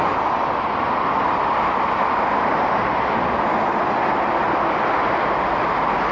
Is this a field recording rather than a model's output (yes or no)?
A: no